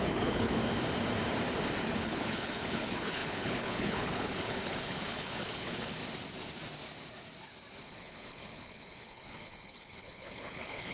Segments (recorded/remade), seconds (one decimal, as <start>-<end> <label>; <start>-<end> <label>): 0.0-0.6 remade; 0.6-1.9 recorded; 1.9-6.0 remade; 6.0-7.8 recorded; 7.8-10.9 remade